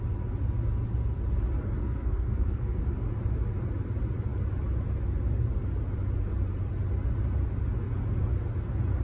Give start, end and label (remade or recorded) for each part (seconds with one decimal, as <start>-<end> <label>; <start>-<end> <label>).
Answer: 0.0-1.8 recorded; 1.8-2.8 remade; 2.8-9.0 recorded